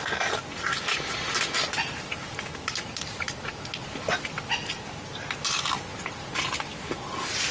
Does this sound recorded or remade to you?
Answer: recorded